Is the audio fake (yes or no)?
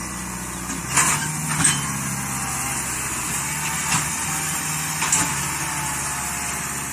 no